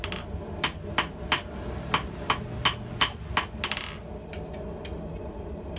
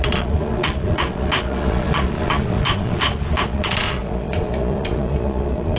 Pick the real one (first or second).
first